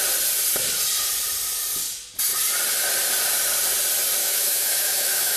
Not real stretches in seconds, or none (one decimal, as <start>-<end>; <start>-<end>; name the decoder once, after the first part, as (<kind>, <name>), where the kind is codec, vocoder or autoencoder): 4.2-5.4 (autoencoder, DAC-VAE)